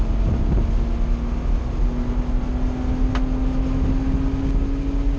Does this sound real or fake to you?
real